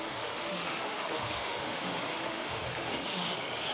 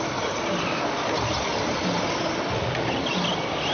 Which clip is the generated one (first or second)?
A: first